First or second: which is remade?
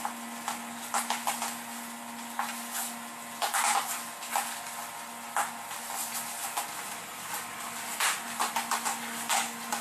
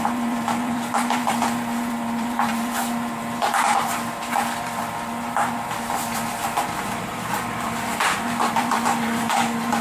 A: second